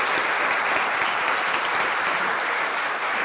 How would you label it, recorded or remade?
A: remade